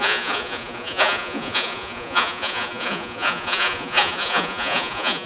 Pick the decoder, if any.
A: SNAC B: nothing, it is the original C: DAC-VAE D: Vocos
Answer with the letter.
D